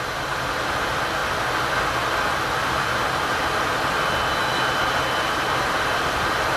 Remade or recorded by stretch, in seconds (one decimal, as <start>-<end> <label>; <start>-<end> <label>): 0.0-6.6 recorded

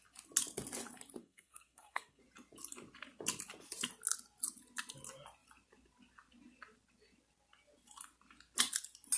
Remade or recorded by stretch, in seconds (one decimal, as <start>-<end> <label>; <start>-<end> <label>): 0.0-1.2 recorded; 1.2-2.2 remade; 2.2-9.2 recorded

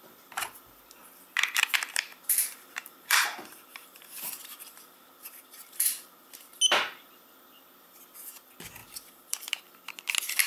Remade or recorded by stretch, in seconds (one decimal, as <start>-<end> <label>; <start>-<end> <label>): 0.0-2.1 recorded; 2.1-6.3 remade; 6.3-8.8 recorded; 8.8-9.6 remade; 9.6-10.5 recorded

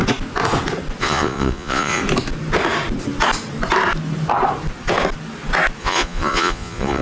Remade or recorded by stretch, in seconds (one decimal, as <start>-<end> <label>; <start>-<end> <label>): 0.0-1.0 recorded; 1.0-2.0 remade; 2.0-5.8 recorded; 5.8-7.0 remade

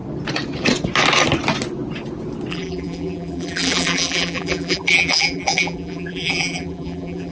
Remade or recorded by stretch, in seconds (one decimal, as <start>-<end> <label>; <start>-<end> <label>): 0.0-2.5 recorded; 2.5-7.3 remade

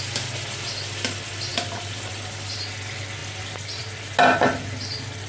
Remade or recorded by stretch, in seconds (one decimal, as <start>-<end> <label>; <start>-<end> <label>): 0.0-5.3 recorded